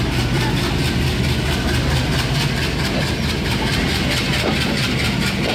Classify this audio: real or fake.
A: real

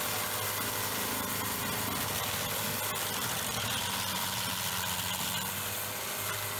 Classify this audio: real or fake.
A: real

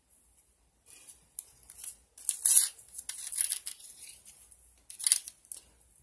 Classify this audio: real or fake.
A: real